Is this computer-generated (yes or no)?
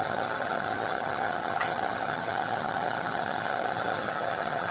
yes